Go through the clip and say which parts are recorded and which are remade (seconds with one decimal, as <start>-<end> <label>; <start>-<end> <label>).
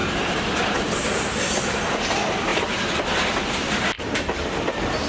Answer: 0.0-5.1 recorded